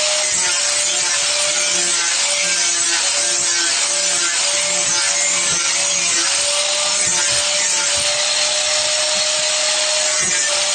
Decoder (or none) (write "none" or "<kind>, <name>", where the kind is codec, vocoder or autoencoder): none